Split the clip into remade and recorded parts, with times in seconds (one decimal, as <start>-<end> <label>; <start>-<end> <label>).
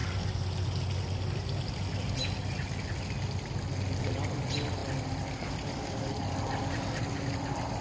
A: 0.0-4.8 recorded; 4.8-7.0 remade; 7.0-7.8 recorded